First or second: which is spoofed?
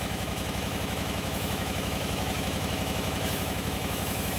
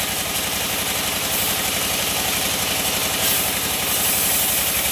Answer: first